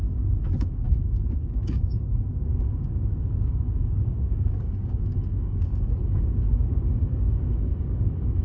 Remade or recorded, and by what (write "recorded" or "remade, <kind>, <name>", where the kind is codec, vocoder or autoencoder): remade, codec, DAC